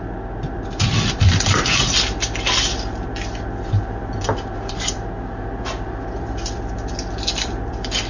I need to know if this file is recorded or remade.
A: remade